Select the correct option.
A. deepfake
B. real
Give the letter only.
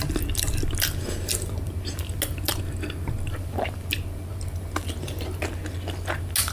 B